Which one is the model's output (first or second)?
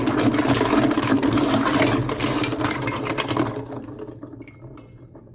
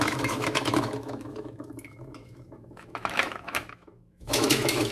second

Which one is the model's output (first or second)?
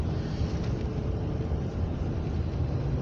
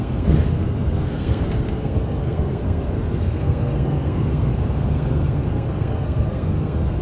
second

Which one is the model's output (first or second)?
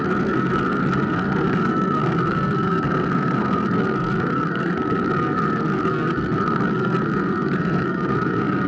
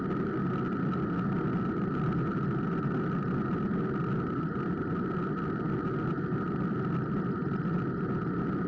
first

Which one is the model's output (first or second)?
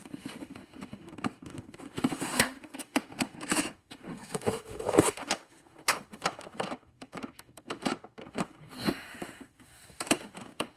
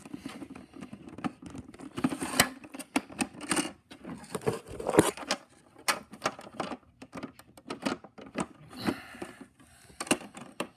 first